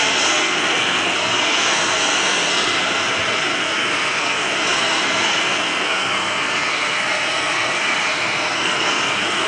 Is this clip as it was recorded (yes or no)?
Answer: no